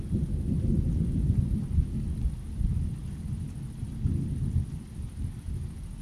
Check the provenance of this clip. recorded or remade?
recorded